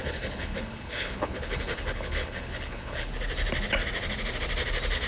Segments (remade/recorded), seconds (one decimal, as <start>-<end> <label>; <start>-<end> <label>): 0.0-3.1 remade; 3.1-5.1 recorded